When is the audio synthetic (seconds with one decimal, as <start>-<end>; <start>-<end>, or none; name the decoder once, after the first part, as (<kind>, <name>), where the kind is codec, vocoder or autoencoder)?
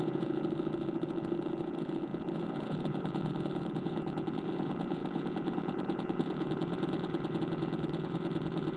0.0-8.8 (vocoder, Vocos)